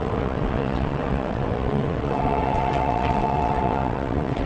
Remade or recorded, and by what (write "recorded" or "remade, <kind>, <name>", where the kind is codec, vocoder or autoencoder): remade, vocoder, WaveNeXt